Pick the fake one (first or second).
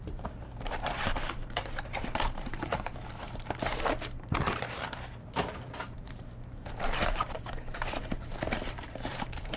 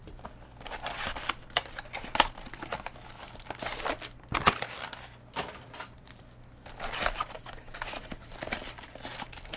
first